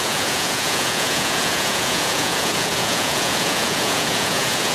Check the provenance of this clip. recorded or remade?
remade